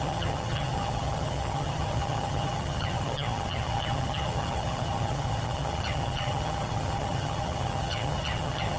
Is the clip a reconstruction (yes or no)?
yes